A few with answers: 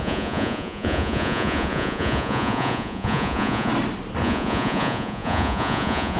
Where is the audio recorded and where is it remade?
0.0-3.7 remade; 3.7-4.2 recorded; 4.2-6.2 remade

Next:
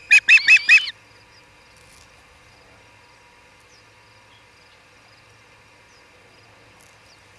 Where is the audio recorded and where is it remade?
0.0-7.4 recorded

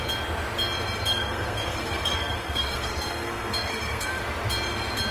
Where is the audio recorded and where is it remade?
0.0-1.1 recorded; 1.1-4.2 remade; 4.2-5.1 recorded

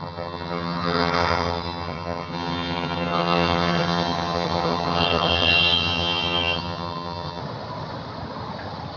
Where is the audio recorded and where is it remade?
0.0-7.4 remade; 7.4-9.0 recorded

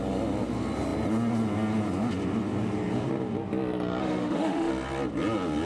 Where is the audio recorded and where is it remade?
0.0-4.0 recorded; 4.0-4.7 remade; 4.7-5.7 recorded